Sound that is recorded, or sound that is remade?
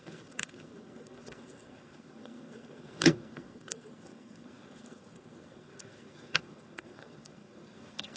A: remade